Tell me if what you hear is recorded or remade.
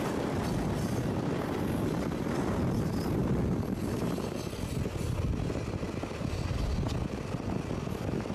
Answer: remade